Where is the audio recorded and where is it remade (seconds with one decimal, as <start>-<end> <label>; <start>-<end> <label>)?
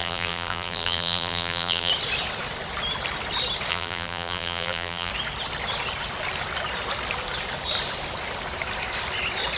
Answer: 0.0-1.9 remade; 1.9-3.7 recorded; 3.7-5.1 remade; 5.1-9.6 recorded